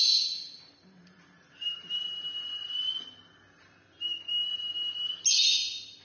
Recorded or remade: recorded